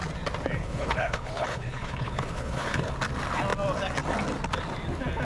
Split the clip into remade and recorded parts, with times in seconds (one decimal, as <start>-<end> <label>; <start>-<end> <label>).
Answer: 0.0-0.6 recorded; 0.6-2.9 remade; 2.9-5.2 recorded